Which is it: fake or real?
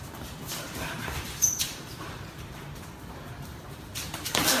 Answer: fake